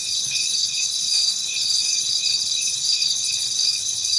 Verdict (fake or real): fake